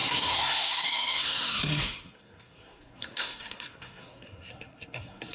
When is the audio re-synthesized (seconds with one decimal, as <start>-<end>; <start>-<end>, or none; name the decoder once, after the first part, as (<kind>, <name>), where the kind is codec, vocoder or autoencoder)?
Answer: 0.0-5.3 (codec, SNAC)